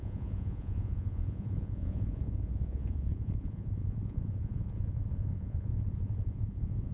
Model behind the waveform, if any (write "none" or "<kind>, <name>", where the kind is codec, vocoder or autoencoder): vocoder, Vocos